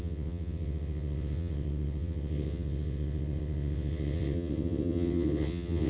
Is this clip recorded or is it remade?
remade